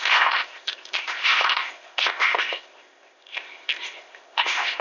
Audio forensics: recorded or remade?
remade